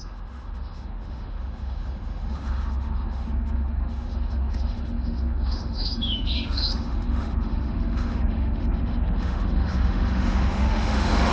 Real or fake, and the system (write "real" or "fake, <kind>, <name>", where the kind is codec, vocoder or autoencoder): fake, autoencoder, DAC-VAE